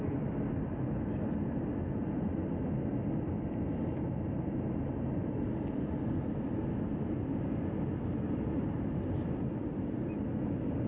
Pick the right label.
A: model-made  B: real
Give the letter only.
B